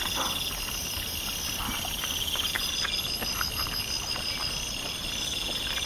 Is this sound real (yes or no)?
yes